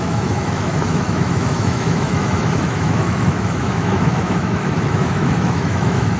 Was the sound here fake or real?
fake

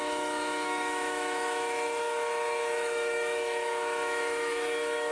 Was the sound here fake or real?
fake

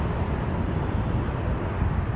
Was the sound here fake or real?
real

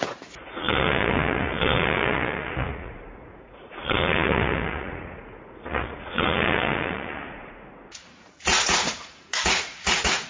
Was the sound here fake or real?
fake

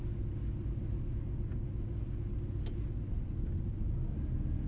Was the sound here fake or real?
real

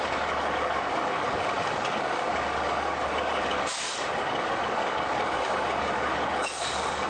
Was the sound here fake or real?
fake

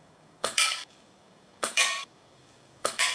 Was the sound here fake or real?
fake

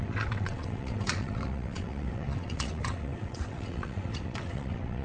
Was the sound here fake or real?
fake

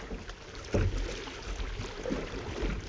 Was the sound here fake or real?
real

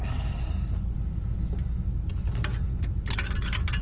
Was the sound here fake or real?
real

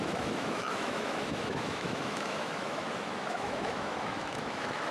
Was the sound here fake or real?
fake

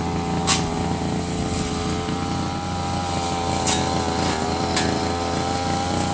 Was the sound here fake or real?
real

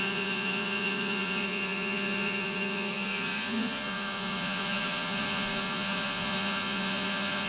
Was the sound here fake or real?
fake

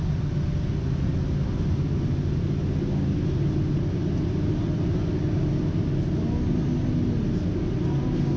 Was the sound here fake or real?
real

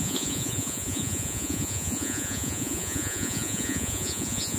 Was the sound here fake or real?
fake